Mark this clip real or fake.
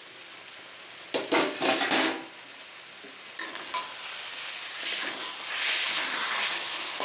real